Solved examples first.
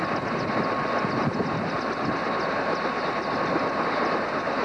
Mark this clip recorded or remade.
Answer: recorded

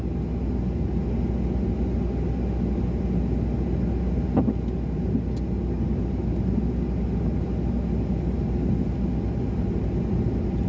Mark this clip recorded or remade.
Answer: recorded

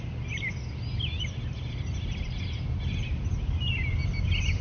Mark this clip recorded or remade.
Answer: recorded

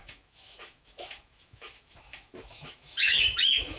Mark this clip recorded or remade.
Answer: remade